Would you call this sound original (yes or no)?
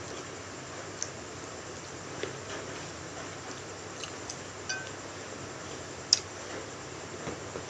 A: yes